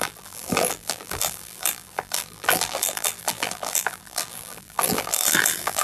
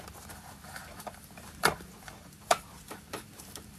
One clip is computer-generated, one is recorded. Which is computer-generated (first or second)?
first